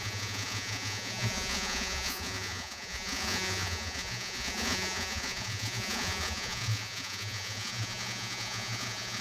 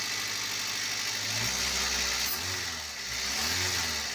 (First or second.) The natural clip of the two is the second